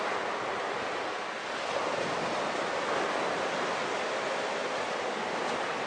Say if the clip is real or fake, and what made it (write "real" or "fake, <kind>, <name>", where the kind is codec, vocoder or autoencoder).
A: real